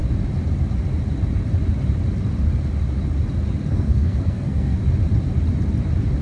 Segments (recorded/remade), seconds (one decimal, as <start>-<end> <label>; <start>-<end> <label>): 0.0-3.7 recorded; 3.7-4.8 remade; 4.8-6.2 recorded